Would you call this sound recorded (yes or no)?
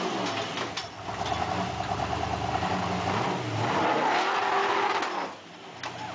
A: yes